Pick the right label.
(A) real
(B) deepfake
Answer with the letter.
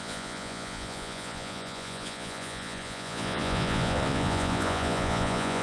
B